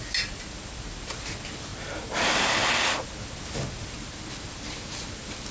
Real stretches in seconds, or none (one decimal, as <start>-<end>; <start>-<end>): 0.0-5.5